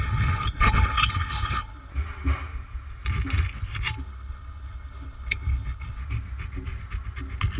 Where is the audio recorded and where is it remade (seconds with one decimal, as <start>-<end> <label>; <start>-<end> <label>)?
0.0-1.9 remade; 1.9-4.0 recorded; 4.0-6.0 remade; 6.0-7.6 recorded